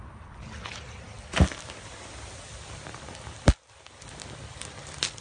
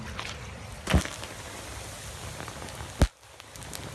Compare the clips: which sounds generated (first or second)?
first